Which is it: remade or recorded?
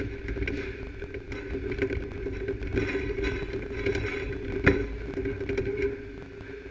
recorded